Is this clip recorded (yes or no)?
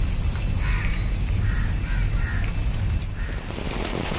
yes